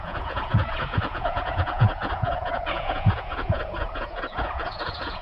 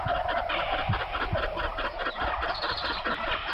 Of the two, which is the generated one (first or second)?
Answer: first